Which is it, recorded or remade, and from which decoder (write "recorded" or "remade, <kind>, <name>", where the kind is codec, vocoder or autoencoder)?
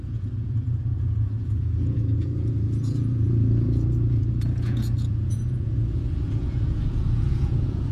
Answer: remade, vocoder, Vocos